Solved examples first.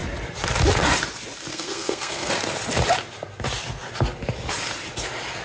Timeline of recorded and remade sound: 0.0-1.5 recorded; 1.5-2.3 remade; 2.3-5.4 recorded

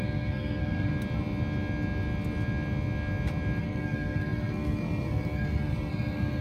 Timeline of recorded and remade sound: 0.0-0.9 remade; 0.9-3.6 recorded; 3.6-6.4 remade

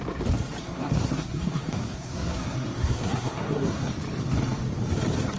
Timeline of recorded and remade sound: 0.0-0.6 recorded; 0.6-3.8 remade; 3.8-5.4 recorded

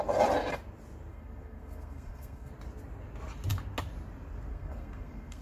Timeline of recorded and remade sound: 0.0-1.1 recorded; 1.1-2.5 remade; 2.5-4.5 recorded; 4.5-5.4 remade

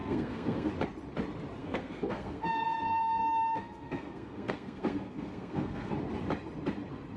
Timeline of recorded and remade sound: 0.0-0.7 remade; 0.7-1.6 recorded; 1.6-5.9 remade; 5.9-7.2 recorded

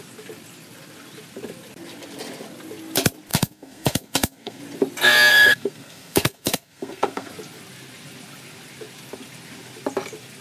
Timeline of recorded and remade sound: 0.0-3.3 recorded; 3.3-4.6 remade; 4.6-5.3 recorded; 5.3-7.3 remade; 7.3-10.4 recorded

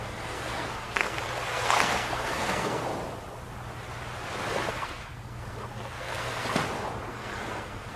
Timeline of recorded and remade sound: 0.0-2.9 remade; 2.9-4.7 recorded; 4.7-6.6 remade; 6.6-7.1 recorded; 7.1-8.0 remade